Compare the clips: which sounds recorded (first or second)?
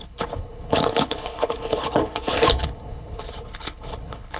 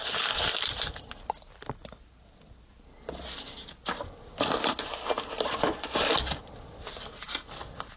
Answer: second